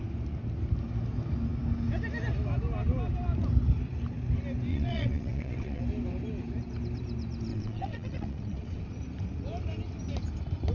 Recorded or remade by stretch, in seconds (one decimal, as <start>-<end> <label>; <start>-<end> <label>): 0.0-4.7 recorded; 4.7-5.8 remade; 5.8-7.5 recorded; 7.5-8.8 remade; 8.8-10.7 recorded

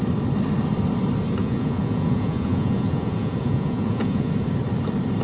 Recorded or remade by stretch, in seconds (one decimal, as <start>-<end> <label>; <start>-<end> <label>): 0.0-1.4 recorded; 1.4-4.3 remade; 4.3-5.2 recorded

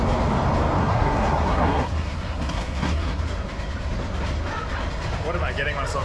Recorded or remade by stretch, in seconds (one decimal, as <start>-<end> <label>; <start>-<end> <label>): 0.0-0.8 recorded; 0.8-3.2 remade; 3.2-6.0 recorded

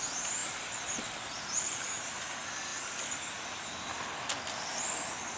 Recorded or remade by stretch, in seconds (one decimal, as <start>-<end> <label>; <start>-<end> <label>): 0.0-0.4 recorded; 0.4-1.8 remade; 1.8-2.7 recorded; 2.7-5.4 remade